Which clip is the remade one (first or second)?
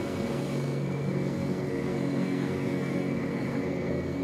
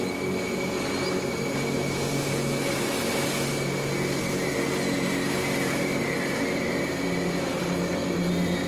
first